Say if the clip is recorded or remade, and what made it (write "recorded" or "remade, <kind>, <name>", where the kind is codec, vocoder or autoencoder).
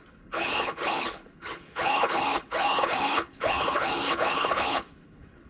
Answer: remade, codec, HILCodec